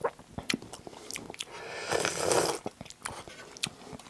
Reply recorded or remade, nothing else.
recorded